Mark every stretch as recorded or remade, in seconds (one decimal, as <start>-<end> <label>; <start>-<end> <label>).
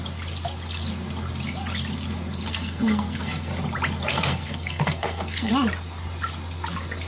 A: 0.0-2.5 recorded; 2.5-3.5 remade; 3.5-4.1 recorded; 4.1-5.5 remade; 5.5-7.1 recorded